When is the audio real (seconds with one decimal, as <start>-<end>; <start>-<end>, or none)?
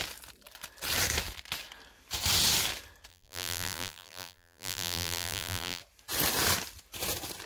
0.0-3.1; 5.8-7.5